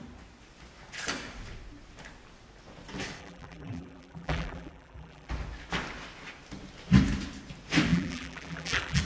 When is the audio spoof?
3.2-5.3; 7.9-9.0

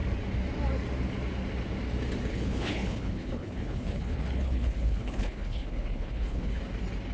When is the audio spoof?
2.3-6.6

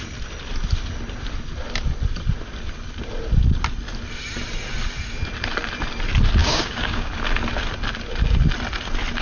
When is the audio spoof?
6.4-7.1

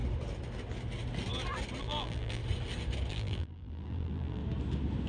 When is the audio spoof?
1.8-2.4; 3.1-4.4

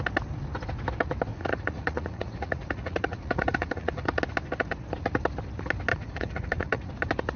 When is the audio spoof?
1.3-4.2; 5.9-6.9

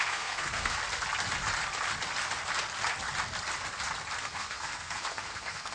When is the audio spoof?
0.0-0.8; 4.2-5.7

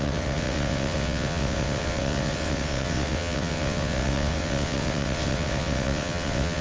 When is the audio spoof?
0.0-6.6